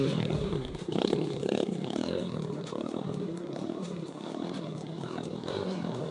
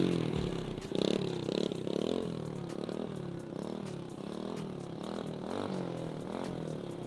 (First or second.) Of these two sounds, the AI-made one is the first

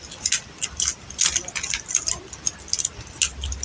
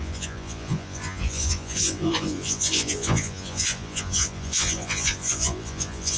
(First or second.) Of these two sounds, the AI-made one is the second